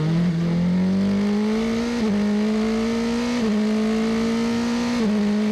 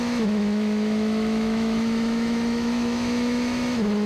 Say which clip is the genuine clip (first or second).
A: first